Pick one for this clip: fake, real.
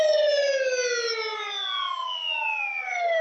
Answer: real